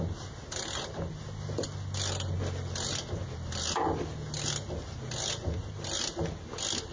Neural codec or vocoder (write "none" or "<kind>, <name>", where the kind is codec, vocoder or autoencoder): none